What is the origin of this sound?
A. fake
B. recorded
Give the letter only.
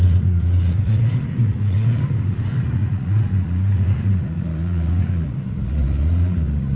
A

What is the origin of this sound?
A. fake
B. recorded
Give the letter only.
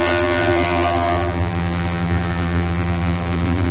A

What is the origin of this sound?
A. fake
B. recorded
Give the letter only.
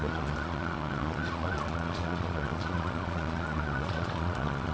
A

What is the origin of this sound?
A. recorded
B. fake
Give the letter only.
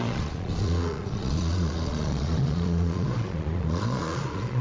B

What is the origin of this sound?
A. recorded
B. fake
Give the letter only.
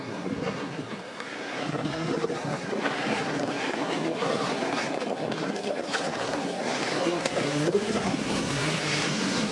B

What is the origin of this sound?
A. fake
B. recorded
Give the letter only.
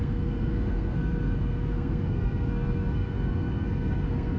A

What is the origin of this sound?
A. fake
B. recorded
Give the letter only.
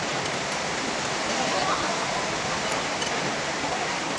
B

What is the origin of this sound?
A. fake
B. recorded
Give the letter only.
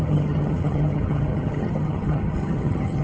A